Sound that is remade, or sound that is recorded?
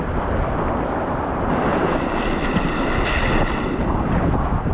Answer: recorded